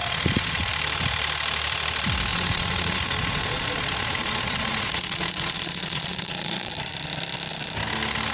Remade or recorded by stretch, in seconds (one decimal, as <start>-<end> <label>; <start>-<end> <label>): 0.0-0.7 remade; 0.7-2.3 recorded; 2.3-6.7 remade; 6.7-8.3 recorded

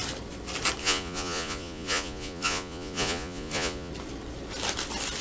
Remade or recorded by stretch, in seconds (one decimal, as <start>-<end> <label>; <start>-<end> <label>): 0.0-0.8 recorded; 0.8-3.9 remade; 3.9-5.2 recorded

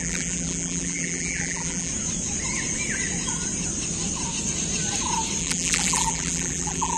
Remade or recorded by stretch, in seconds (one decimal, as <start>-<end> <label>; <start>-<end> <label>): 0.0-1.9 remade; 1.9-5.4 recorded; 5.4-7.0 remade

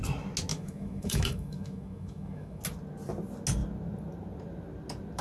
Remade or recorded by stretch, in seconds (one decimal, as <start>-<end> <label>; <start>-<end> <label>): 0.0-0.5 recorded; 0.5-2.6 remade; 2.6-5.2 recorded